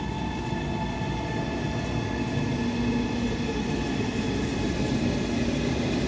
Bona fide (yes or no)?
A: yes